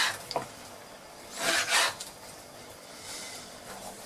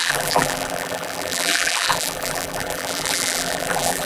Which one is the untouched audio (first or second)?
first